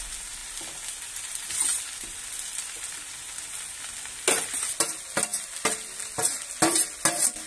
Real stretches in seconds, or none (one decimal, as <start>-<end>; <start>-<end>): 0.0-7.5